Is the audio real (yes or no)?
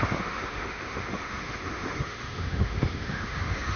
no